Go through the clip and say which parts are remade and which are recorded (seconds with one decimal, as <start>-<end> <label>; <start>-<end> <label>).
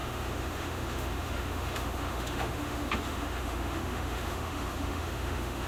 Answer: 0.0-5.7 remade